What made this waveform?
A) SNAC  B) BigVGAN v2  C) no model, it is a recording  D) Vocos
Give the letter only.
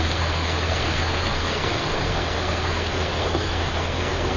A